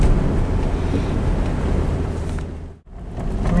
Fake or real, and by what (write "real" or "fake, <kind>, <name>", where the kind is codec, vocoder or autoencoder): real